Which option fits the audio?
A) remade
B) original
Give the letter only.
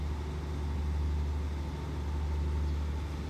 B